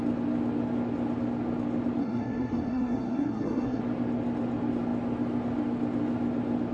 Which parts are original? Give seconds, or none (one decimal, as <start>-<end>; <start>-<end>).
0.0-2.0; 3.8-6.7

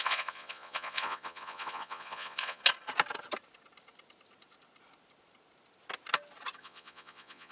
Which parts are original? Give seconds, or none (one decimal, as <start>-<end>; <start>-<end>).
2.6-6.6

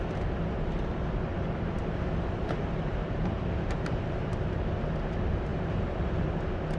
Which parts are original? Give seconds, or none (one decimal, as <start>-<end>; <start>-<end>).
0.0-1.3; 4.3-5.5; 6.3-6.8

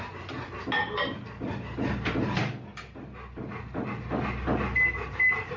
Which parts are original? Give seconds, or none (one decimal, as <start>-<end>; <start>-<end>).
0.0-5.6

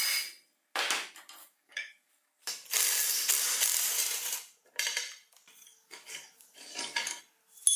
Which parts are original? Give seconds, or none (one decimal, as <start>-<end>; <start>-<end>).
0.0-1.4; 2.1-5.6; 7.2-7.8

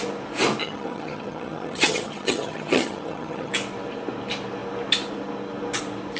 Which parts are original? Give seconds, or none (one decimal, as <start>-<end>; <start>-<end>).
0.0-0.6; 3.5-6.2

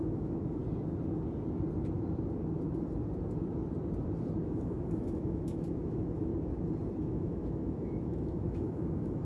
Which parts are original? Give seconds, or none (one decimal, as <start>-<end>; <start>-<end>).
0.6-4.4; 6.3-7.0